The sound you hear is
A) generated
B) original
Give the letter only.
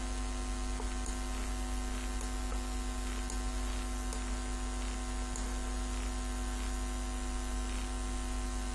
B